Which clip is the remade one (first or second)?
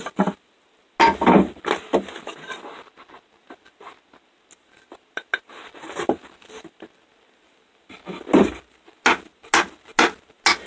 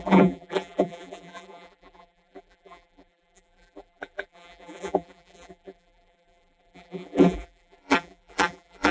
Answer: second